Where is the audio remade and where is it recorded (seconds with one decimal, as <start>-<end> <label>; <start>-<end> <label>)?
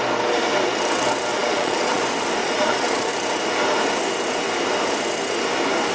0.0-1.3 recorded; 1.3-2.0 remade; 2.0-2.4 recorded; 2.4-3.1 remade; 3.1-5.9 recorded